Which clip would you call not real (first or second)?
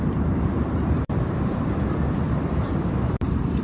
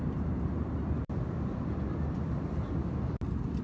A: first